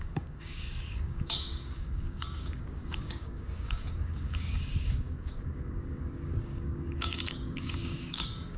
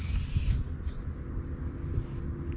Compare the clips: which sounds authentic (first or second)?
second